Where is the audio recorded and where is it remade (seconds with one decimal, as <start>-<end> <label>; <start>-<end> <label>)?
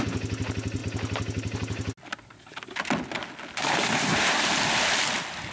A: 0.0-5.5 recorded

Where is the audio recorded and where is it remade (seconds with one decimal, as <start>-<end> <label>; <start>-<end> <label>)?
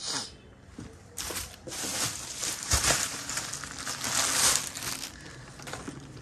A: 0.0-1.0 recorded; 1.0-1.6 remade; 1.6-2.4 recorded; 2.4-3.5 remade; 3.5-6.2 recorded